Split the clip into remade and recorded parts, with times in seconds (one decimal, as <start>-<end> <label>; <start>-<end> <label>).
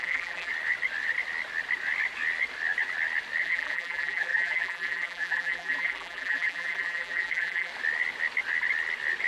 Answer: 0.0-0.5 remade; 0.5-3.4 recorded; 3.4-7.7 remade; 7.7-9.3 recorded